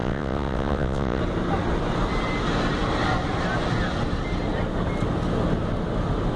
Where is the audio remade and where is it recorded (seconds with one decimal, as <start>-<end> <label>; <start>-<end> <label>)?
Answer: 0.0-1.2 remade; 1.2-6.4 recorded

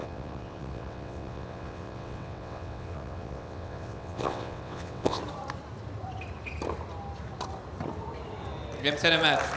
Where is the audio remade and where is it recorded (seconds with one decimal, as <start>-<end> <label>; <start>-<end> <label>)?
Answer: 0.0-5.2 remade; 5.2-9.6 recorded

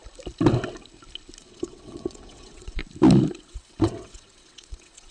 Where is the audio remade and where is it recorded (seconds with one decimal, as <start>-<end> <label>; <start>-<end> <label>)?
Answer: 0.0-1.4 recorded; 1.4-2.8 remade; 2.8-3.4 recorded; 3.4-5.1 remade

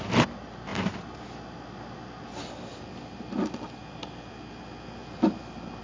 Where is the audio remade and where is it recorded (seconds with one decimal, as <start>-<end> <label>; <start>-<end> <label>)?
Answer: 0.0-5.8 recorded

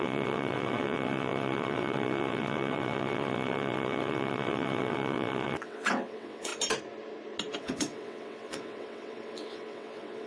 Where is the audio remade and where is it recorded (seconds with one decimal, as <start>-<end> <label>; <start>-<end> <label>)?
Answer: 0.0-6.5 remade; 6.5-7.6 recorded; 7.6-10.3 remade

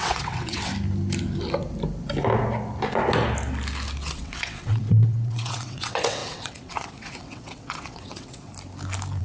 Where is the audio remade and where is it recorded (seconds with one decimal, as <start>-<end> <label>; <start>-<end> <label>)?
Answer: 0.0-0.7 remade; 0.7-4.0 recorded; 4.0-8.5 remade; 8.5-9.2 recorded

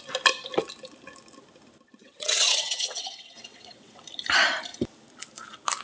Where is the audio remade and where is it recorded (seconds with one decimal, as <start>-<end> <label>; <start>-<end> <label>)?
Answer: 0.0-2.0 recorded; 2.0-4.0 remade; 4.0-5.8 recorded

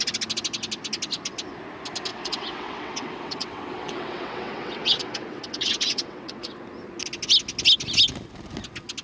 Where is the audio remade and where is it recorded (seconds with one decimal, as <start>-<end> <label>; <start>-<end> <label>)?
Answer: 0.0-2.1 recorded; 2.1-6.6 remade; 6.6-9.0 recorded